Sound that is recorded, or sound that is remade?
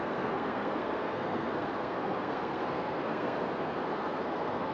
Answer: remade